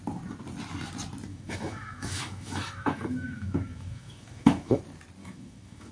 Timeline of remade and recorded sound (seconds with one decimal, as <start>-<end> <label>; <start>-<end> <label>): 0.0-1.3 recorded; 1.3-4.8 remade; 4.8-5.2 recorded; 5.2-5.9 remade

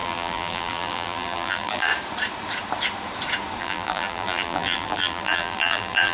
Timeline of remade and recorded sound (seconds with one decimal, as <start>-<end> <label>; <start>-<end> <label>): 0.0-1.9 remade; 1.9-3.6 recorded; 3.6-6.1 remade

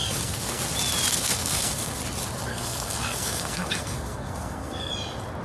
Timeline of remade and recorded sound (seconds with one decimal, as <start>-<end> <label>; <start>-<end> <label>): 0.0-0.6 remade; 0.6-1.1 recorded; 1.1-2.0 remade; 2.0-2.5 recorded; 2.5-4.9 remade; 4.9-5.4 recorded